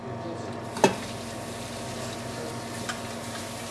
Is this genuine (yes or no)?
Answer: yes